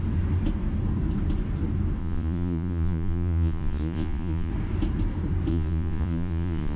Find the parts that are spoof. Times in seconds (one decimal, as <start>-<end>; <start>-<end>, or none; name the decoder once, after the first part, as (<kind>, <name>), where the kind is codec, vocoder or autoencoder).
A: 2.0-4.5 (vocoder, Vocos); 5.5-6.8